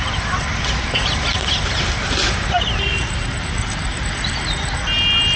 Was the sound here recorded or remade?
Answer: recorded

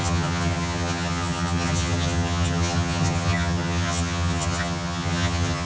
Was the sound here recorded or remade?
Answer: remade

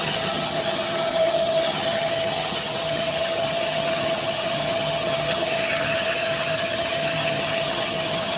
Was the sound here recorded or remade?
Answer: remade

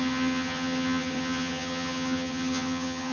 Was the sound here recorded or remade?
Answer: remade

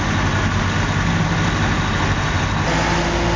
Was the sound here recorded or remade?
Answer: recorded